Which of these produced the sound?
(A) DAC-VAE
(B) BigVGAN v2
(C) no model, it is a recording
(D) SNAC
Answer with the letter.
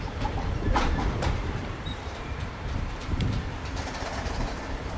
B